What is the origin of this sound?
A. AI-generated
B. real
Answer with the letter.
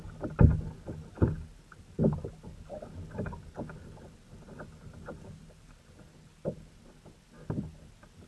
B